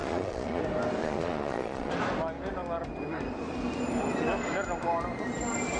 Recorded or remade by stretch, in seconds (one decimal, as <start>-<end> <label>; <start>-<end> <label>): 0.0-0.6 remade; 0.6-1.0 recorded; 1.0-1.9 remade; 1.9-5.8 recorded